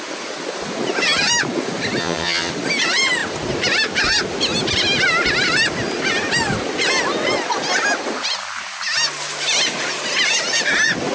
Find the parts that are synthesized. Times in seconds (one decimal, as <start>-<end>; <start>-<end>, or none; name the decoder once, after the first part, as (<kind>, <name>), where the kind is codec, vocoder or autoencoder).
2.0-2.5 (vocoder, HiFi-GAN)

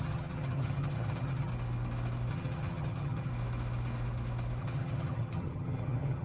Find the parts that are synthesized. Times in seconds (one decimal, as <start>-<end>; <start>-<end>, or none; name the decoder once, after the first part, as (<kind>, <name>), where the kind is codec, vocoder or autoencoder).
0.0-1.5 (vocoder, HiFi-GAN); 2.3-3.3; 4.6-6.2

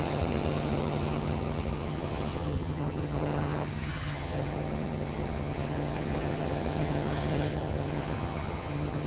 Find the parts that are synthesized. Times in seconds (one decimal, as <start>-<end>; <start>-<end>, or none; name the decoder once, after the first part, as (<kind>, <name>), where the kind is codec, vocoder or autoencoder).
0.0-9.1 (vocoder, HiFi-GAN)